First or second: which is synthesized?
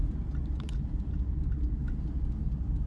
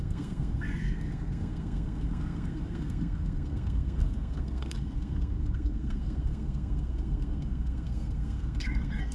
second